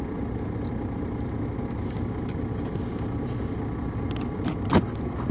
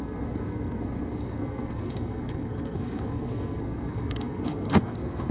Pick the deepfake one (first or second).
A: second